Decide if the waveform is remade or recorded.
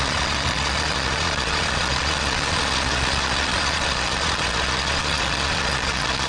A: remade